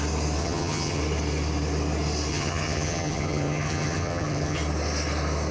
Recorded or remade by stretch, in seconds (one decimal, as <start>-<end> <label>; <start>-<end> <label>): 0.0-0.4 recorded; 0.4-1.0 remade; 1.0-2.3 recorded; 2.3-4.6 remade; 4.6-5.5 recorded